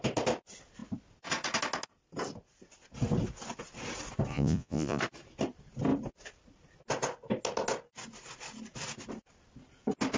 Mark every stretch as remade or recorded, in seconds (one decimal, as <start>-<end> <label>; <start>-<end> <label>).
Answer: 0.0-4.3 recorded; 4.3-5.0 remade; 5.0-10.2 recorded